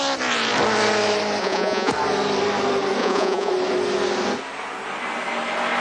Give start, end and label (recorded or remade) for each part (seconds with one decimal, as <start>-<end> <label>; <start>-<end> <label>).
0.0-1.4 recorded; 1.4-1.9 remade; 1.9-3.0 recorded; 3.0-3.5 remade; 3.5-5.8 recorded